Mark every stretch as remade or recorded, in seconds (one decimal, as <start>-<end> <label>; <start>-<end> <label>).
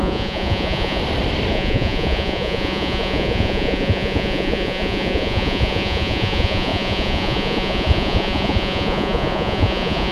0.0-1.0 remade; 1.0-1.5 recorded; 1.5-10.1 remade